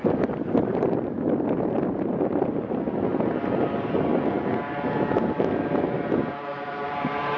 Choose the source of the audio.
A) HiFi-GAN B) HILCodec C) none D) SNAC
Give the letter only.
C